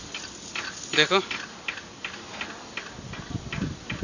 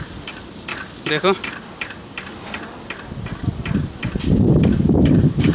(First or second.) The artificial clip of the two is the second